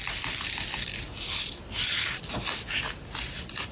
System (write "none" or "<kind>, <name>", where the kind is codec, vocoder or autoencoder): none